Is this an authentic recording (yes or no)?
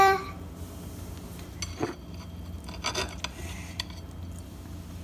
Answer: yes